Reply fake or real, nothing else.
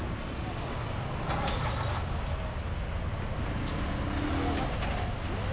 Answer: real